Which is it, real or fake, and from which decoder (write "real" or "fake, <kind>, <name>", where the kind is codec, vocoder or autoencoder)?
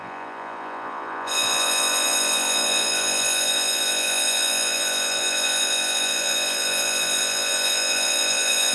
fake, vocoder, Vocos